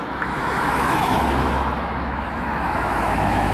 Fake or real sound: fake